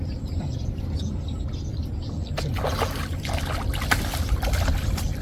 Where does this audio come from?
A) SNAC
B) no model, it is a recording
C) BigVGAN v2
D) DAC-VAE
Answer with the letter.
B